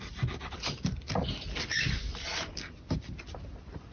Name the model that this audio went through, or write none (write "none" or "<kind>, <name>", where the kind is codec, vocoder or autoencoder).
none